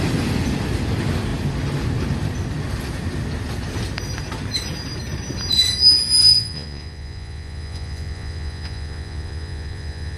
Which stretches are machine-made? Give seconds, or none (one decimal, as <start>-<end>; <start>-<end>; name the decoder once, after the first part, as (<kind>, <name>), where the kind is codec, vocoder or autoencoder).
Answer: 6.2-10.2 (vocoder, Vocos)